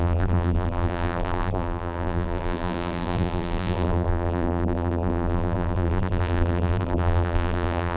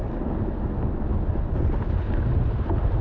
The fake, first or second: first